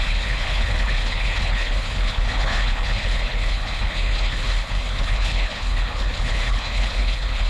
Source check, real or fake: fake